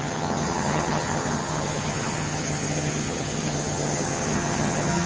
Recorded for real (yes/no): no